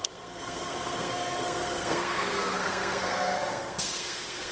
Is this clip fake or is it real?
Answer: fake